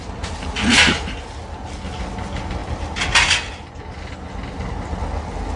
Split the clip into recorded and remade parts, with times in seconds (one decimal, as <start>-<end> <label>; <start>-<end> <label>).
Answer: 0.0-5.6 recorded